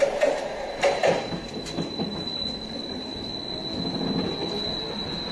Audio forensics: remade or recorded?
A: recorded